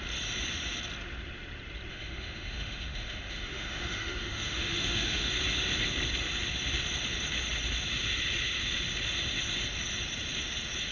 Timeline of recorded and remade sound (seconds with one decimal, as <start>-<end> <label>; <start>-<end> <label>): 0.0-1.9 recorded; 1.9-5.3 remade; 5.3-10.9 recorded